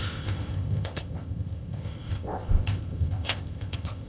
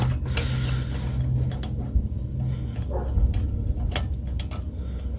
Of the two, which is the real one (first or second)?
second